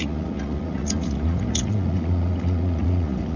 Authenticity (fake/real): fake